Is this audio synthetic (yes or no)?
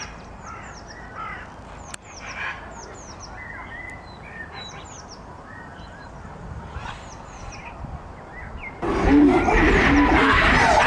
yes